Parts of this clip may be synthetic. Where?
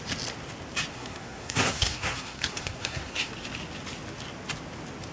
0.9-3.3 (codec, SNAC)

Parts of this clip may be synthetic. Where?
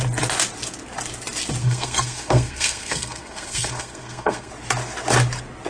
1.6-4.5 (codec, SNAC)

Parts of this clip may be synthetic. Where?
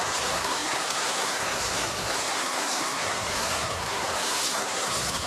0.0-5.3 (codec, SNAC)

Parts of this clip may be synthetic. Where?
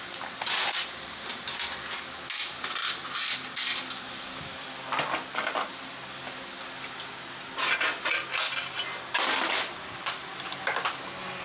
none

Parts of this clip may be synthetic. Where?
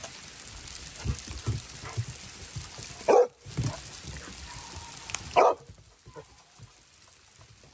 none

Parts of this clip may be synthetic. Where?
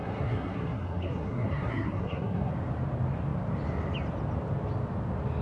0.0-2.5 (codec, SNAC)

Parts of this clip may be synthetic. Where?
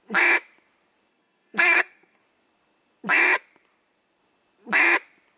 1.1-2.2 (codec, SNAC)